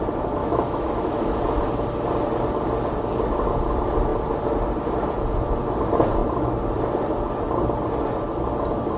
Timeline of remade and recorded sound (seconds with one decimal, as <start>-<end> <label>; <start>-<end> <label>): 0.0-0.4 recorded; 0.4-1.4 remade; 1.4-9.0 recorded